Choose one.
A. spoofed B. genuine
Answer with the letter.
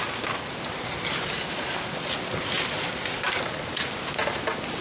B